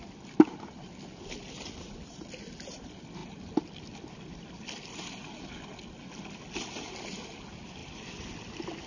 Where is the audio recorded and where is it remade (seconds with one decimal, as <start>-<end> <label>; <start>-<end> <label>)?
0.0-8.9 recorded